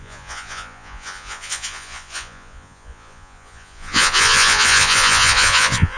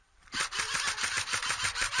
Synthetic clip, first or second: first